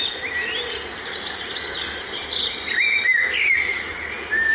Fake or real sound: fake